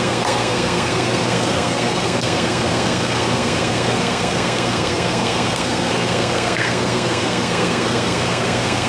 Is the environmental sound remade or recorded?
remade